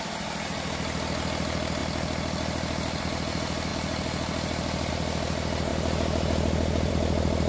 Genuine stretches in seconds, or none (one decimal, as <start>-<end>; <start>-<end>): 0.0-7.5